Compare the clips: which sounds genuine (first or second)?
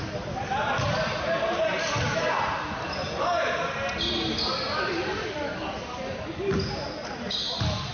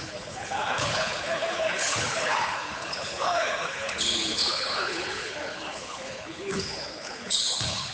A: first